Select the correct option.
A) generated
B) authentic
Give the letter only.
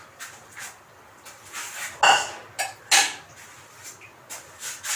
B